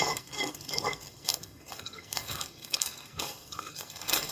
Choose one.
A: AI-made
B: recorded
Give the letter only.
A